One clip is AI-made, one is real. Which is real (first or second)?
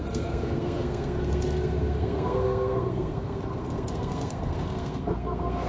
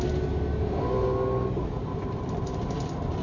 second